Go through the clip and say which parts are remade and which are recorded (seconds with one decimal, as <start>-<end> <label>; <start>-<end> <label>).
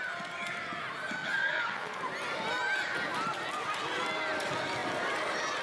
0.0-1.2 recorded; 1.2-2.0 remade; 2.0-5.6 recorded